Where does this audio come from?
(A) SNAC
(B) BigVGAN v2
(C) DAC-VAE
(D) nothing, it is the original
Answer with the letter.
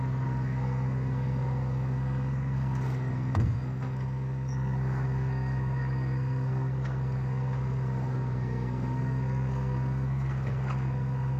A